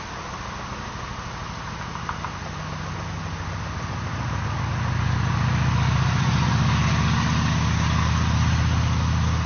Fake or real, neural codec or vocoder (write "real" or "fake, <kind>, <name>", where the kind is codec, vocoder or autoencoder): real